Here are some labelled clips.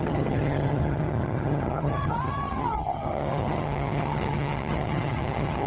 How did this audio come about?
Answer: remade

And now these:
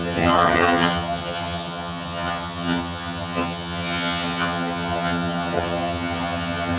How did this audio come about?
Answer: remade